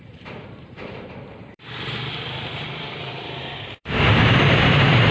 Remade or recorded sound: remade